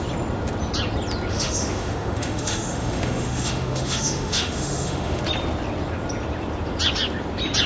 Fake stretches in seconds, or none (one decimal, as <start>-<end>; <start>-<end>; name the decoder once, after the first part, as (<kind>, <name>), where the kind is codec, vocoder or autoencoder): 1.3-5.2 (autoencoder, DAC-VAE)

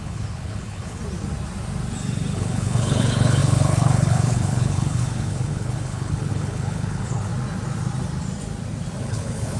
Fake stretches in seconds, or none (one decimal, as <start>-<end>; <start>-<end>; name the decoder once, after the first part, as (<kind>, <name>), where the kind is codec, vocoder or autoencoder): 0.0-1.0 (codec, HILCodec); 2.3-7.3; 9.0-9.6